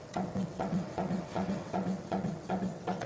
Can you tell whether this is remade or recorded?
remade